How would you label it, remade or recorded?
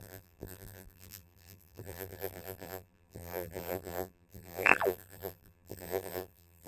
remade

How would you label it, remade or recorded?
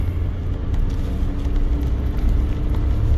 recorded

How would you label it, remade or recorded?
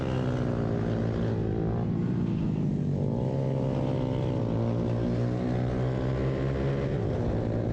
recorded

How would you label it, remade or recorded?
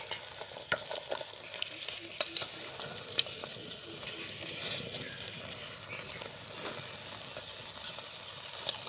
recorded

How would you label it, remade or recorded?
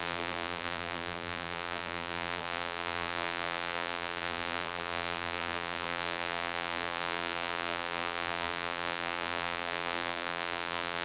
remade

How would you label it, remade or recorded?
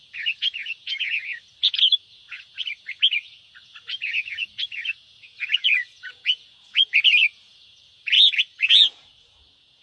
remade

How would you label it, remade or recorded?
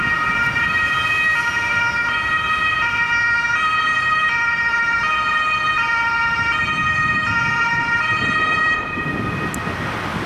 recorded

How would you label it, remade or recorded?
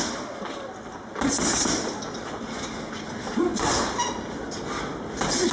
recorded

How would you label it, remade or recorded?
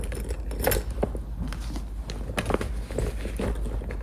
recorded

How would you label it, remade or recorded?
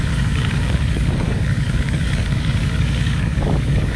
remade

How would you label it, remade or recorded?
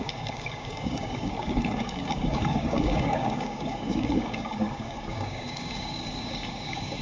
remade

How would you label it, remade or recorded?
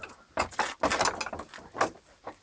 recorded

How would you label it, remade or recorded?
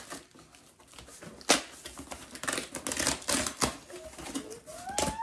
recorded